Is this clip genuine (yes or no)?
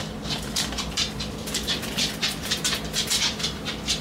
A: no